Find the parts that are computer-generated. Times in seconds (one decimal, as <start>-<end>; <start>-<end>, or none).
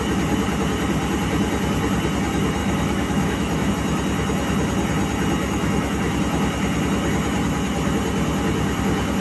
2.6-3.7; 5.4-6.2